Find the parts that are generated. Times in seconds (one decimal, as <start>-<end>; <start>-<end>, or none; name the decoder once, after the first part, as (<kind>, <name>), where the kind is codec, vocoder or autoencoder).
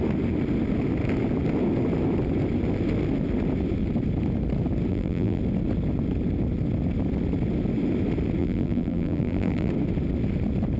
4.9-5.4 (vocoder, BigVGAN v2); 8.4-9.7